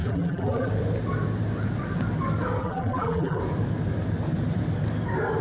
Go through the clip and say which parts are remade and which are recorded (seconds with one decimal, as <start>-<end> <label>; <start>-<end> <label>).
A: 0.0-0.7 remade; 0.7-2.6 recorded; 2.6-3.4 remade; 3.4-5.4 recorded